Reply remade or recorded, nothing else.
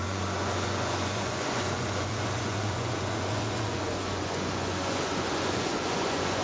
remade